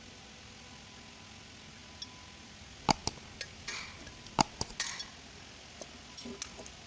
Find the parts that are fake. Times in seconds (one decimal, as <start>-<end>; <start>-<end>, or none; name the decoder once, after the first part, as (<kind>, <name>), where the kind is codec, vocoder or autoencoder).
none